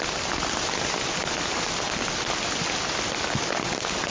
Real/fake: real